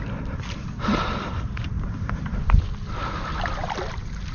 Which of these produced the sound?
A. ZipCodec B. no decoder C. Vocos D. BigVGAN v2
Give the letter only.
B